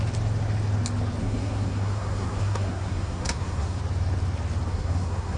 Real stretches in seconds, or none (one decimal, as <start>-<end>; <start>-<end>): 0.0-1.2; 3.8-4.7